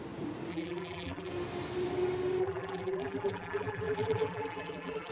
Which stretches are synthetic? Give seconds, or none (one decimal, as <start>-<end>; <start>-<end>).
0.5-1.3; 2.4-5.1